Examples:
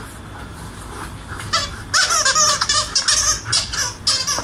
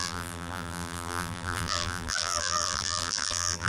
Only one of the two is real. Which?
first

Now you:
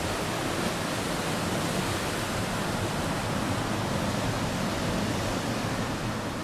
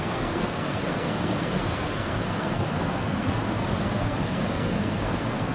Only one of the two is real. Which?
first